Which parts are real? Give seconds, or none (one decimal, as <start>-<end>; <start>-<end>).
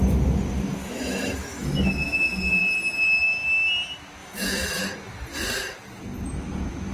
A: 0.0-0.8; 2.6-4.2; 4.8-6.9